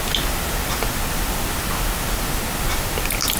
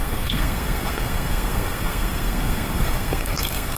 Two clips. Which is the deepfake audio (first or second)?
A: second